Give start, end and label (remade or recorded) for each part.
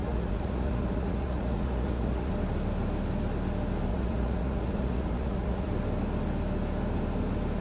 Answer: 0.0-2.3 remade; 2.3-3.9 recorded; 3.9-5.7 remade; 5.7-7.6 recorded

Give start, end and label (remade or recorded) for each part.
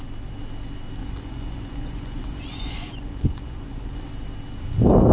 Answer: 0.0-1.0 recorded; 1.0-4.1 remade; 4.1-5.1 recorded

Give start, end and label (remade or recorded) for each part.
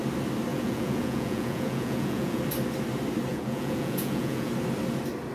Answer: 0.0-0.5 recorded; 0.5-2.4 remade; 2.4-3.3 recorded; 3.3-4.5 remade; 4.5-5.3 recorded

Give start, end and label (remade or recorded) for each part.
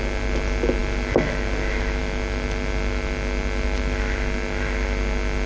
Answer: 0.0-5.5 recorded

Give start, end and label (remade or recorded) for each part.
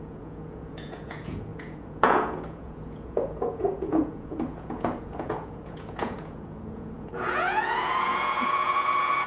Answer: 0.0-9.3 remade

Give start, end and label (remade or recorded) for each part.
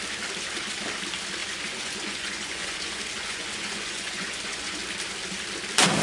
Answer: 0.0-1.4 recorded; 1.4-4.8 remade; 4.8-6.0 recorded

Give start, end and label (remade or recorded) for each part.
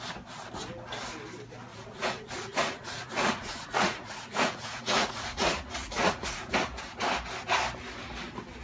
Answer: 0.0-1.7 recorded; 1.7-6.5 remade; 6.5-8.6 recorded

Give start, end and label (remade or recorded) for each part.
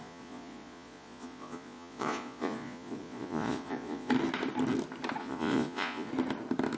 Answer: 0.0-4.1 remade; 4.1-5.2 recorded; 5.2-6.1 remade; 6.1-6.8 recorded